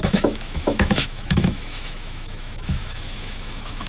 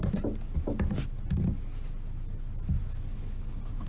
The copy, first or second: first